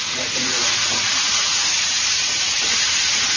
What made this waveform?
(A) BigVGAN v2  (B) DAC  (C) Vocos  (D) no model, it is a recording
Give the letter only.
C